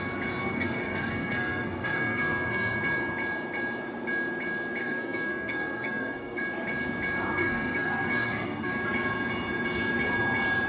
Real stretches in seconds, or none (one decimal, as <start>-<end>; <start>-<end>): 0.0-0.4; 2.8-4.8; 6.4-7.4; 8.7-10.7